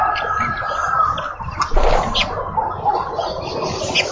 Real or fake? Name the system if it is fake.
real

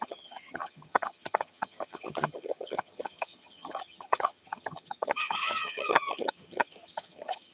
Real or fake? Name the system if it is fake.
fake, vocoder, HiFi-GAN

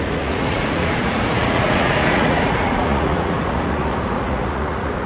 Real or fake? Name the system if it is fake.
fake, vocoder, Vocos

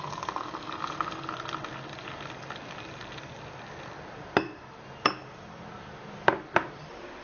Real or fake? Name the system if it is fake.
real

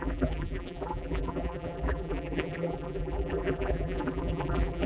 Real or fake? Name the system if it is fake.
fake, vocoder, BigVGAN v2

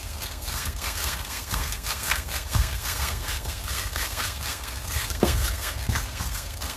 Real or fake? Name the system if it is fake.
fake, codec, SNAC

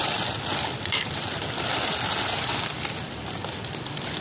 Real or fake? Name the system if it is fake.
fake, vocoder, BigVGAN v2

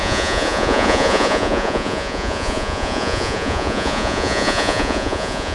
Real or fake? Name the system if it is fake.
fake, vocoder, Vocos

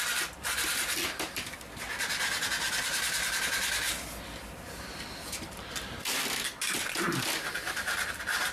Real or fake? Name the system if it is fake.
fake, vocoder, BigVGAN v2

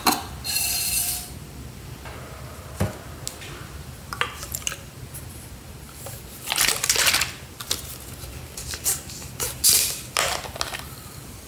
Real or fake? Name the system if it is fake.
real